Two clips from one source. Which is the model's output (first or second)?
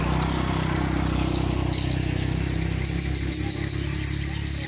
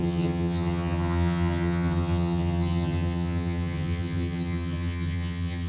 second